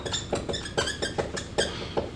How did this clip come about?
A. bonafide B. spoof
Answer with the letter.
A